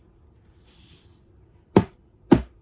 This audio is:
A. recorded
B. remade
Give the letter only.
A